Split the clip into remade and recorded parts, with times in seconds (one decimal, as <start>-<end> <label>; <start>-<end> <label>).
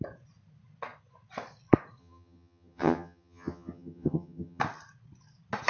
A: 0.0-2.0 recorded; 2.0-4.6 remade; 4.6-5.7 recorded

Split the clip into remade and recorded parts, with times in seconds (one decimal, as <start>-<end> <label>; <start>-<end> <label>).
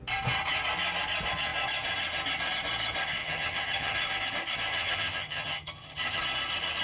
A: 0.0-3.2 recorded; 3.2-4.1 remade; 4.1-4.7 recorded; 4.7-6.2 remade; 6.2-6.8 recorded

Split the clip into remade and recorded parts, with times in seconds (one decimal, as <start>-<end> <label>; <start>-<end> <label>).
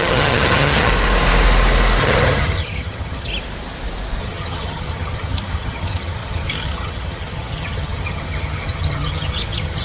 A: 0.0-0.9 remade; 0.9-2.0 recorded; 2.0-3.3 remade; 3.3-4.2 recorded; 4.2-9.8 remade